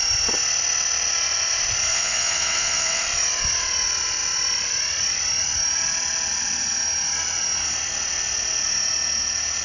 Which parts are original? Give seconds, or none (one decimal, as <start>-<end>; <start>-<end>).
0.0-1.9; 3.0-9.6